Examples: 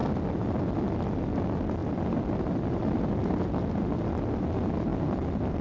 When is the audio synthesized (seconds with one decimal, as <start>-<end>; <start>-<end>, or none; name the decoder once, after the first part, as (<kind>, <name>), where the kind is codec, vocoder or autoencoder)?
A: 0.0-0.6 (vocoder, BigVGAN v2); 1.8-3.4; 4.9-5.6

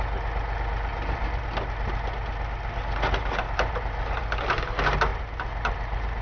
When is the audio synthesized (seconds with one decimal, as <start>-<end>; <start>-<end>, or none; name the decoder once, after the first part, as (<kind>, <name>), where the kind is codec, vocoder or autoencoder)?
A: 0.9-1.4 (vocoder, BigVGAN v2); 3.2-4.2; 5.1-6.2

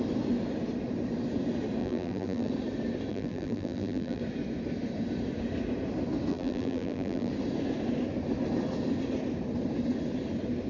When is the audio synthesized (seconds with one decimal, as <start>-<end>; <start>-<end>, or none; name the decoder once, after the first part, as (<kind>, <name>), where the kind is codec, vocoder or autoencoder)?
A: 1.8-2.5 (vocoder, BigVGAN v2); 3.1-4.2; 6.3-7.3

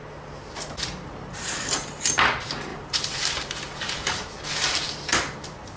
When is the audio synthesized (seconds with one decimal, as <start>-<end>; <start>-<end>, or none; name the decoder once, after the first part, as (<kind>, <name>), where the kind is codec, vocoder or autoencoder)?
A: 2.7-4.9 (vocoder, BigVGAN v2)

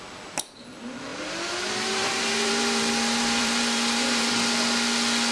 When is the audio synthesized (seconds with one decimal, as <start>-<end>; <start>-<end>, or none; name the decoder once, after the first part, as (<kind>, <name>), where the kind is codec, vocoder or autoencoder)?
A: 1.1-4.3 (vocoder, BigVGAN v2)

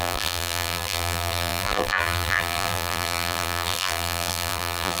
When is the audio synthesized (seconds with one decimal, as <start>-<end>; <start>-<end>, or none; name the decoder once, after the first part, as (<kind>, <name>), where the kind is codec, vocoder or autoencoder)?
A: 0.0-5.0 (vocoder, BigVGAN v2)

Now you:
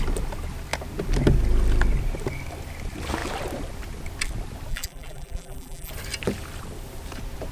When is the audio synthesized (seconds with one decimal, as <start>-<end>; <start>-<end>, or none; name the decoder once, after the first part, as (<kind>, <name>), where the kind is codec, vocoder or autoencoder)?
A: 4.7-5.9 (vocoder, BigVGAN v2)

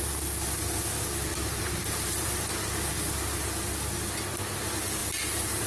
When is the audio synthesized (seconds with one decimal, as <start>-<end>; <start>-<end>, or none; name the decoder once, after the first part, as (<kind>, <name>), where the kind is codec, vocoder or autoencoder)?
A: 1.3-2.5 (vocoder, BigVGAN v2); 5.0-5.7